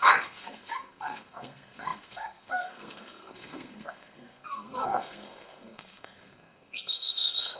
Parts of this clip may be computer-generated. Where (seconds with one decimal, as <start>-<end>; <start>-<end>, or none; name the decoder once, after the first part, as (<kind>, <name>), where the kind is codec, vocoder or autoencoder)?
0.0-7.6 (codec, SNAC)